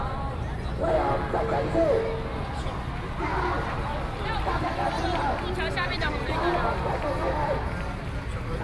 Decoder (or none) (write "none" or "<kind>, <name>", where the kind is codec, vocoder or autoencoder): none